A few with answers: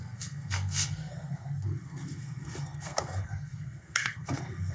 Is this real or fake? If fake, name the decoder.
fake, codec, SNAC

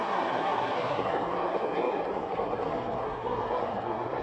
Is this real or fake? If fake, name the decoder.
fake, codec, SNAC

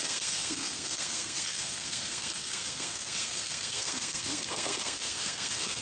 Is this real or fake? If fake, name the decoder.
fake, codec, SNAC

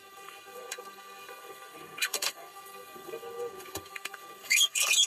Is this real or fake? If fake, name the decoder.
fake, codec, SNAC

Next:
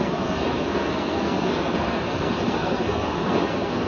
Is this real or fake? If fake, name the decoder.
fake, codec, SNAC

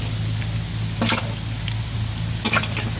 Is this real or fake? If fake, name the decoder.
real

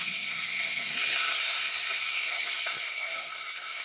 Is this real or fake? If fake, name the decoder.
fake, codec, SNAC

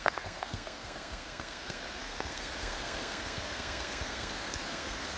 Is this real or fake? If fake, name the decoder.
fake, codec, SNAC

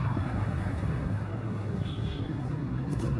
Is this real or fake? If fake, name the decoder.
fake, codec, SNAC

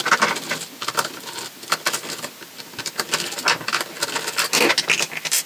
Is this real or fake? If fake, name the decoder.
real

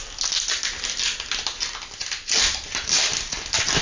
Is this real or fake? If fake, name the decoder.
real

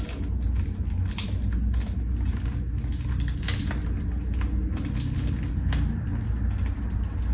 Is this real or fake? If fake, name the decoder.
real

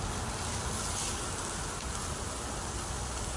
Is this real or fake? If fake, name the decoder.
real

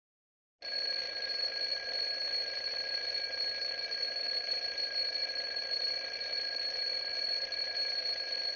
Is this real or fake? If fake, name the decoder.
real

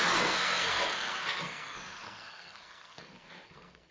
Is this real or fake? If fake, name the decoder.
fake, codec, SNAC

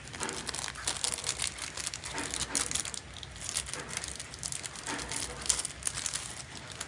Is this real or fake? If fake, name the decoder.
real